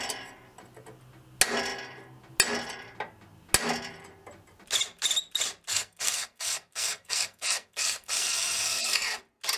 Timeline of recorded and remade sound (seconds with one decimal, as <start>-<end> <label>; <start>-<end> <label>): 0.0-5.7 recorded; 5.7-9.2 remade; 9.2-9.6 recorded

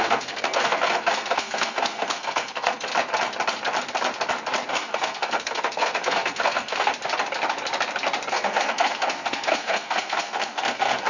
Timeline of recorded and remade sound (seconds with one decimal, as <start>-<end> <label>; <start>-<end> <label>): 0.0-2.9 remade; 2.9-4.7 recorded; 4.7-6.9 remade; 6.9-8.3 recorded; 8.3-11.1 remade

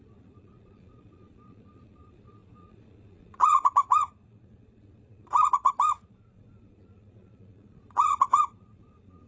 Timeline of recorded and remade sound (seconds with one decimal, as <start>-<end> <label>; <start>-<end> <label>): 0.0-9.3 remade

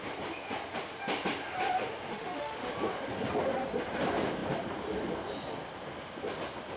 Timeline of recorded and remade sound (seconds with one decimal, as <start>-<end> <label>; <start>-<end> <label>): 0.0-2.1 recorded; 2.1-2.7 remade; 2.7-6.8 recorded

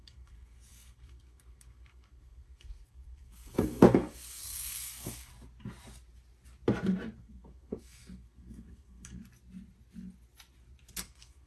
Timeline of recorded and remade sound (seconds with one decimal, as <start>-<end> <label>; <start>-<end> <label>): 0.0-5.3 remade; 5.3-7.2 recorded; 7.2-9.2 remade; 9.2-11.0 recorded; 11.0-11.5 remade

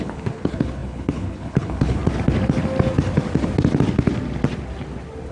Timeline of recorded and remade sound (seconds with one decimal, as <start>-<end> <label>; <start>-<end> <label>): 0.0-2.0 remade; 2.0-5.3 recorded

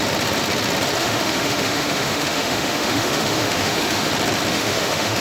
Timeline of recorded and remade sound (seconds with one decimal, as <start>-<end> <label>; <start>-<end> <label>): 0.0-1.0 recorded; 1.0-4.1 remade; 4.1-4.5 recorded; 4.5-5.2 remade